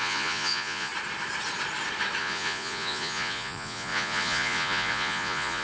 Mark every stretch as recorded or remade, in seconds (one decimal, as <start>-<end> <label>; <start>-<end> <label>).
0.0-0.9 remade; 0.9-2.2 recorded; 2.2-5.6 remade